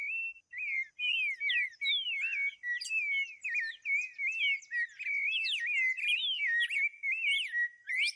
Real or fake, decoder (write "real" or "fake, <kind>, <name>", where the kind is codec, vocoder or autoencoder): real